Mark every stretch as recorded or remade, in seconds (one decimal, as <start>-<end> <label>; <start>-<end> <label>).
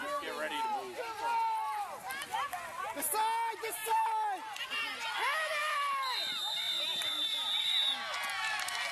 0.0-8.9 recorded